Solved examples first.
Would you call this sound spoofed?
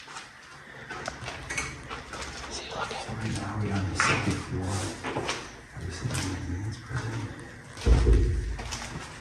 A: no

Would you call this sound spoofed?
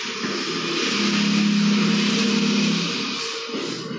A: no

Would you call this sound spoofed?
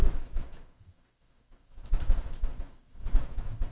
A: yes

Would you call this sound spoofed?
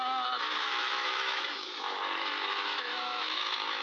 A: yes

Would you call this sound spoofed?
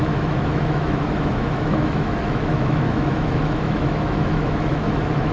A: yes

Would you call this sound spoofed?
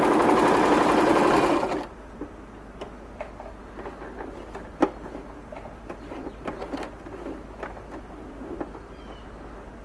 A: no